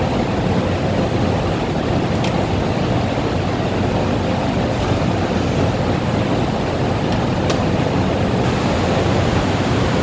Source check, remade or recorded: recorded